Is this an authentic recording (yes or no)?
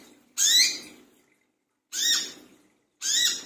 yes